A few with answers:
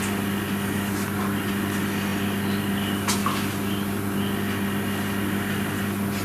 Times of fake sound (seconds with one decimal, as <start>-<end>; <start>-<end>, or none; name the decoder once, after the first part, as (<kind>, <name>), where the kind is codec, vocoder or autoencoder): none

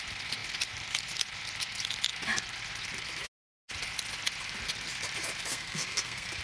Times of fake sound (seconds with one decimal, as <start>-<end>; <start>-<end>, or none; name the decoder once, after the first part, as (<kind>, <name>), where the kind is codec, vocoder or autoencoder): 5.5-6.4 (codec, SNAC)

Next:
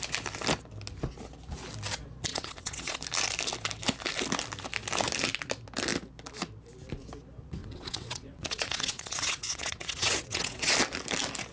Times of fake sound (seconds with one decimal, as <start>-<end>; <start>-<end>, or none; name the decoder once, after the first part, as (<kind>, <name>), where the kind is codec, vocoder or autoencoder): 2.3-3.0 (vocoder, WaveNeXt); 7.6-10.7